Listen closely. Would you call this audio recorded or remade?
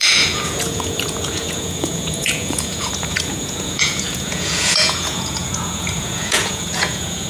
remade